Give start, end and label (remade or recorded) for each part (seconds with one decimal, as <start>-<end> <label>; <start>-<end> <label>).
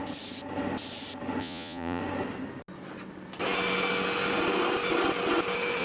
0.0-1.4 recorded; 1.4-2.0 remade; 2.0-5.8 recorded